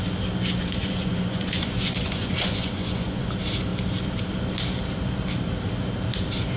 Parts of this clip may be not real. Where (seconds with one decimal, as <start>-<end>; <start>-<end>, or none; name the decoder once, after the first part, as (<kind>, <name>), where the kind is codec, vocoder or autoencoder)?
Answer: 0.8-3.3 (vocoder, Vocos)